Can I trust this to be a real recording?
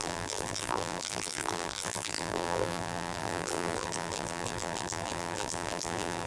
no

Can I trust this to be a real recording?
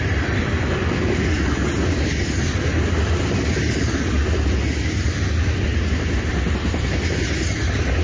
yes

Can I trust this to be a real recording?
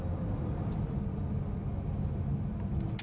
yes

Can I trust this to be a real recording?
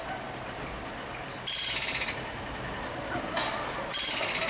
yes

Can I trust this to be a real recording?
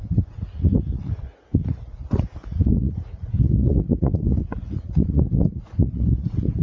no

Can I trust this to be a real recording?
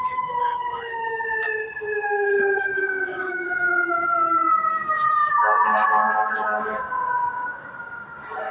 no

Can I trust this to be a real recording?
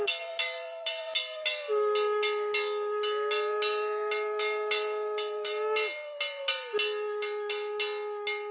yes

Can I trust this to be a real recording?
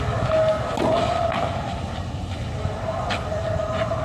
yes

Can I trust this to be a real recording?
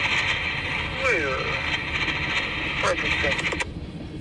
yes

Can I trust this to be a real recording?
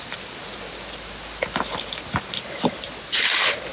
yes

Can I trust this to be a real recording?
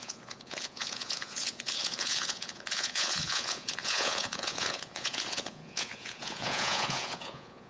no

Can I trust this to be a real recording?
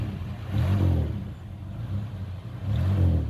yes